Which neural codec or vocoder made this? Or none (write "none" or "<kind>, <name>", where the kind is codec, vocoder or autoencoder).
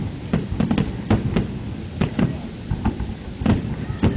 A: none